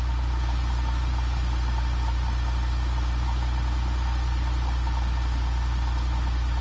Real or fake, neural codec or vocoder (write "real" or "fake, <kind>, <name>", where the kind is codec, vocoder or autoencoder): real